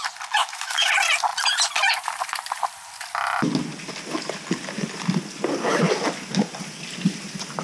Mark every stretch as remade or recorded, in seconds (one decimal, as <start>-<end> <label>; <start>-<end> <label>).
0.0-0.4 recorded; 0.4-0.9 remade; 0.9-7.6 recorded